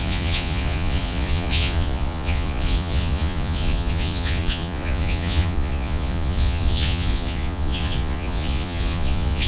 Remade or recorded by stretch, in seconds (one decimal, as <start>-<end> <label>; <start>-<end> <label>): 0.0-9.5 remade